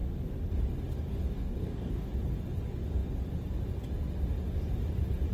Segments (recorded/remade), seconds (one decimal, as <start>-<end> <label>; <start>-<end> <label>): 0.0-1.1 recorded; 1.1-2.1 remade; 2.1-5.3 recorded